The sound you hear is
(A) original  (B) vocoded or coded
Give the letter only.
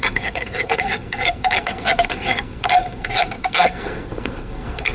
B